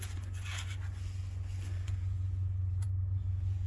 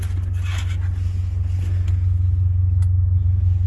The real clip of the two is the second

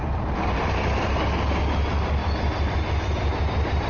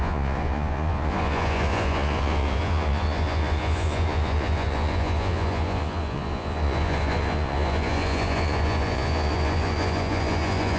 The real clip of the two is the first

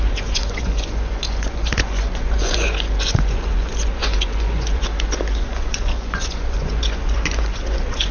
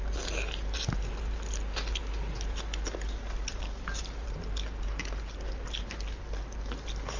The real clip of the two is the second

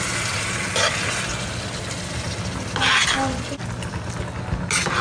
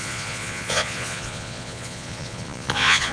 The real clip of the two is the first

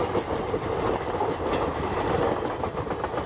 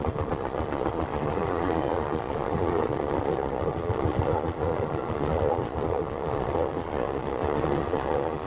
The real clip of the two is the first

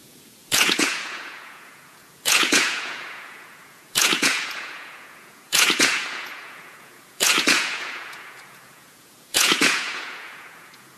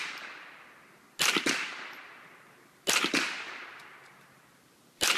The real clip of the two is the second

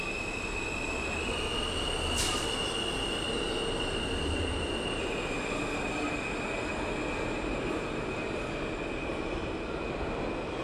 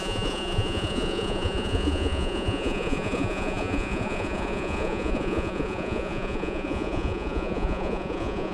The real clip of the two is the first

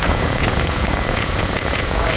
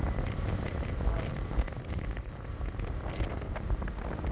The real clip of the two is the second